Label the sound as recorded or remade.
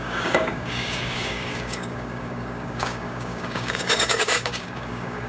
remade